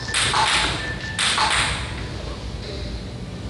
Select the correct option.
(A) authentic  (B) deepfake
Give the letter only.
A